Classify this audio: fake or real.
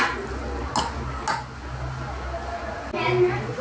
real